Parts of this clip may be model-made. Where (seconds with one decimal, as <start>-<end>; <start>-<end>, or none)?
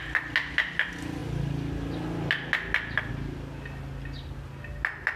none